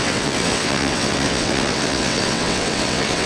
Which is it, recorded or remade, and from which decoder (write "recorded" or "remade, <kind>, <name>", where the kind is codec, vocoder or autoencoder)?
remade, vocoder, WaveNeXt